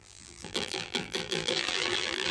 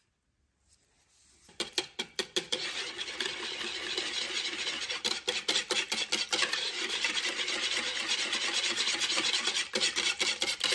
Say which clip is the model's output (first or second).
first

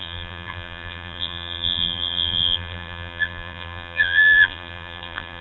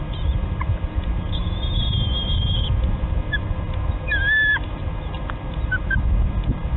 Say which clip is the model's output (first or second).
first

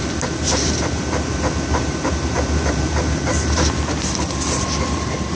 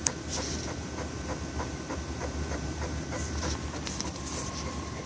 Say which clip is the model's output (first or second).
first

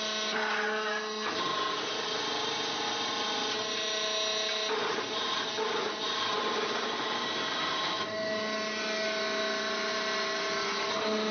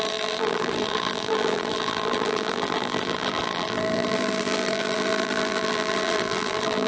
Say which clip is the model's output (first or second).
second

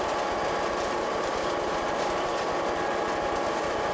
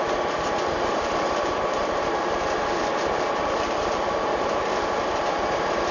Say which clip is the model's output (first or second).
second